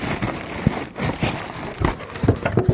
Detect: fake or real real